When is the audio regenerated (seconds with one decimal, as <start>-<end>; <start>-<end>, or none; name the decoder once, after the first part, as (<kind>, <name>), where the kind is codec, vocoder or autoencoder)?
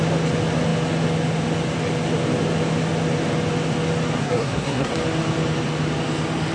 4.2-4.9 (codec, SNAC)